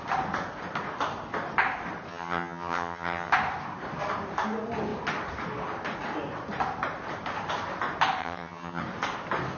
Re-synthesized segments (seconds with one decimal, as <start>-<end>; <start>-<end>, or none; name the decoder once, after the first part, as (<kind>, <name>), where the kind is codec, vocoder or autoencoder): 2.1-3.3 (vocoder, HiFi-GAN); 8.2-8.8